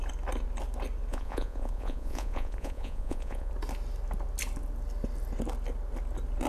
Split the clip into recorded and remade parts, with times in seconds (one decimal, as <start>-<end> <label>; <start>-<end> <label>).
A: 0.0-1.1 recorded; 1.1-3.5 remade; 3.5-6.5 recorded